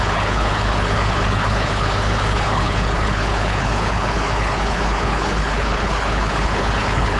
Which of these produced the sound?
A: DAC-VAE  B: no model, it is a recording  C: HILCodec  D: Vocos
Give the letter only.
C